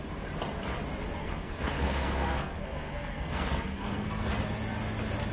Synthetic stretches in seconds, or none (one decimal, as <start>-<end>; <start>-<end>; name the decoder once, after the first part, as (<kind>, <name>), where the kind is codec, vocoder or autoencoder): 1.2-4.4 (codec, SNAC)